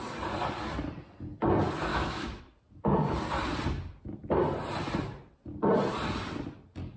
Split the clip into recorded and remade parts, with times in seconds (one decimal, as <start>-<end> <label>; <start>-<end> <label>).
0.0-1.9 recorded; 1.9-2.4 remade; 2.4-7.0 recorded